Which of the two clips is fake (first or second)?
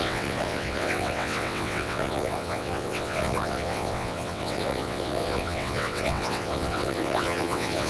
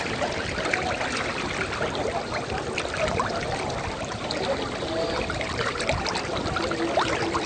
first